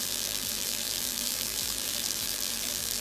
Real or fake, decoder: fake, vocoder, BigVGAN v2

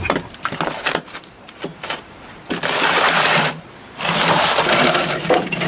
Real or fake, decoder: fake, vocoder, BigVGAN v2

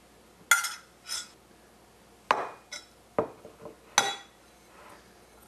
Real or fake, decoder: real